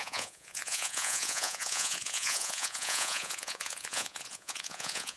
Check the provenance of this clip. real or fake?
fake